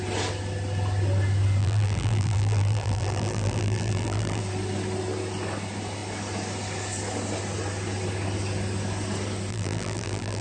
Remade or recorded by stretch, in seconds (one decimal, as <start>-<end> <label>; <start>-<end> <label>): 0.0-1.6 recorded; 1.6-4.4 remade; 4.4-9.5 recorded; 9.5-10.4 remade